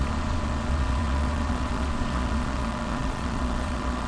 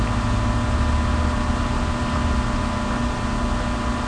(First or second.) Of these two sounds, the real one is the second